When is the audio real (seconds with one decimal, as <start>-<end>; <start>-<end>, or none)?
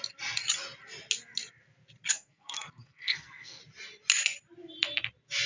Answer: 0.0-2.1; 3.6-5.5